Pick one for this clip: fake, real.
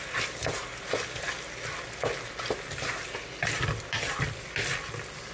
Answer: real